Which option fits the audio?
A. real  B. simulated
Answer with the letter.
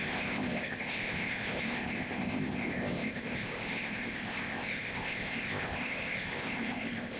B